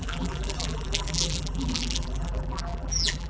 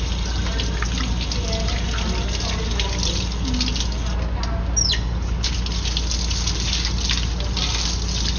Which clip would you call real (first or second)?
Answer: second